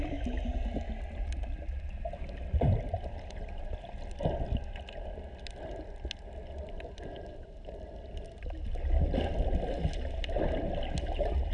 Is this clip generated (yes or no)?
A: no